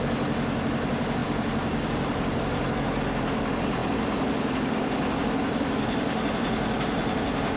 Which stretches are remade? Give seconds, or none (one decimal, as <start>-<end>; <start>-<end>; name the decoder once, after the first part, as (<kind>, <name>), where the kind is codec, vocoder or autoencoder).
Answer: 1.2-2.4 (vocoder, BigVGAN v2)